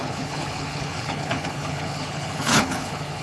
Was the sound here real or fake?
fake